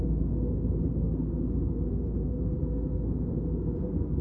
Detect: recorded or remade remade